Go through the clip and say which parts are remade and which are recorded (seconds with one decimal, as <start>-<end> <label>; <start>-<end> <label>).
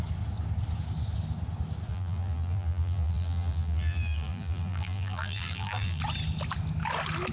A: 0.0-1.9 recorded; 1.9-6.0 remade; 6.0-7.3 recorded